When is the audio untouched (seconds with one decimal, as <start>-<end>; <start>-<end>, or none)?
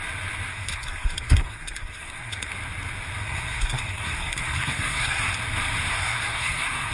0.0-0.5; 2.5-3.2; 5.3-5.9